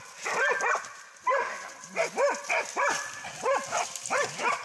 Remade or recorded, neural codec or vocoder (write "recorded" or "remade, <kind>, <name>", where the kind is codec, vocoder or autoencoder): recorded